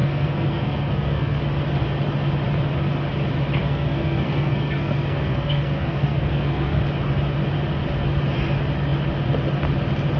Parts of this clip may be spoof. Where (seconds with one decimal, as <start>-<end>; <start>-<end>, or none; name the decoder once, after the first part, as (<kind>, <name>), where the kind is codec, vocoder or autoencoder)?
0.0-1.4 (codec, SNAC); 3.6-6.8